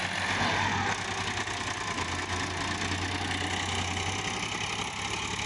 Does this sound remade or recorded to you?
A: recorded